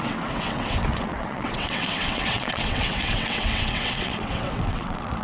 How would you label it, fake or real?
fake